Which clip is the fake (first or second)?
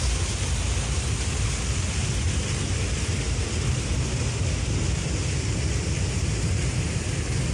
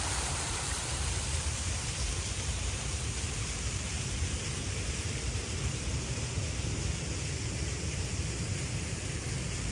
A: second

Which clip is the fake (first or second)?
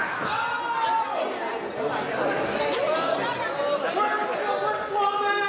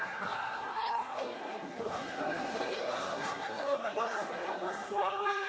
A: second